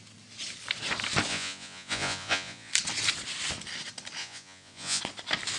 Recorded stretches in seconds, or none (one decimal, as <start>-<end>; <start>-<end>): 0.0-1.3; 2.7-4.2; 5.0-5.6